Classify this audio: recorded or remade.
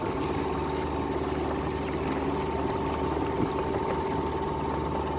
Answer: recorded